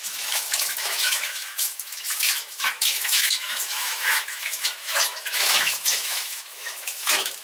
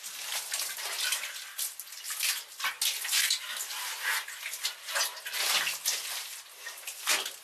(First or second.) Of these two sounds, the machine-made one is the first